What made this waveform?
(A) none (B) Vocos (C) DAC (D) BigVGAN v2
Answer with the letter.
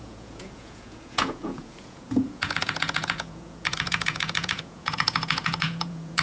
B